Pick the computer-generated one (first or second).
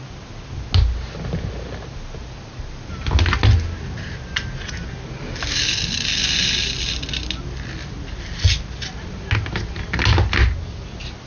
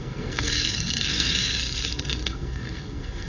second